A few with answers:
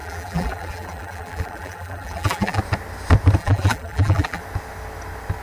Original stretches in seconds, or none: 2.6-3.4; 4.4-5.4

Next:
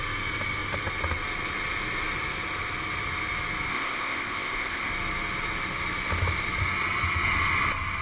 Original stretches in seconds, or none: 0.0-3.7; 4.9-8.0